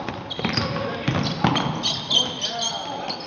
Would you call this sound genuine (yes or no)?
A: yes